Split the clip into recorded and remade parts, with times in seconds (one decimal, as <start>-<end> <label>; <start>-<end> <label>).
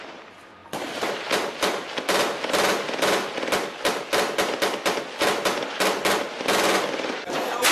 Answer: 0.0-7.7 recorded